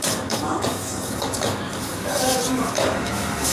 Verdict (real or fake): fake